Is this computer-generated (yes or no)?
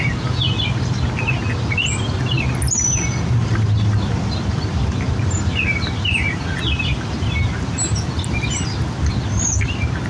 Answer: no